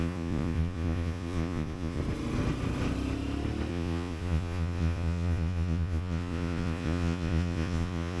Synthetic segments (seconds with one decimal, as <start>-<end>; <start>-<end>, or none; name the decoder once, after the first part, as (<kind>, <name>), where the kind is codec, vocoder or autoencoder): 0.0-2.0 (vocoder, Vocos); 3.7-8.2